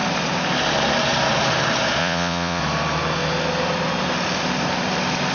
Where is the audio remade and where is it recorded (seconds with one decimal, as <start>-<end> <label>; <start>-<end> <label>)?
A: 0.0-2.0 recorded; 2.0-2.6 remade; 2.6-5.3 recorded